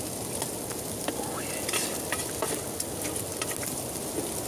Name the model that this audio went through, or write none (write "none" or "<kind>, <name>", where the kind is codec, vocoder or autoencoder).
none